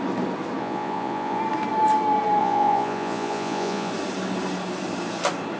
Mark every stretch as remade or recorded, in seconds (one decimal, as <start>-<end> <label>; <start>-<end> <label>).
0.0-0.6 recorded; 0.6-1.4 remade; 1.4-2.4 recorded; 2.4-3.9 remade; 3.9-5.6 recorded